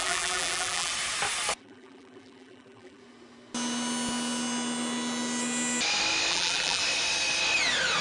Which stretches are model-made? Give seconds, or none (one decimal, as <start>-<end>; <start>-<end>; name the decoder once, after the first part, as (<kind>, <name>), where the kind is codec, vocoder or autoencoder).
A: 0.0-0.9 (vocoder, BigVGAN v2); 1.6-3.0; 6.3-6.8